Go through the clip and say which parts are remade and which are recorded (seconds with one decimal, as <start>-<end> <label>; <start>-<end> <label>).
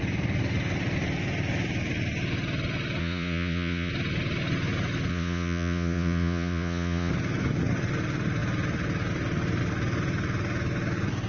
0.0-3.0 recorded; 3.0-3.9 remade; 3.9-5.1 recorded; 5.1-7.1 remade; 7.1-11.3 recorded